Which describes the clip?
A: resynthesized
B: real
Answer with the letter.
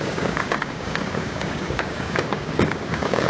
A